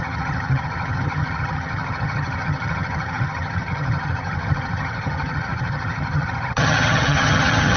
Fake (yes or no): yes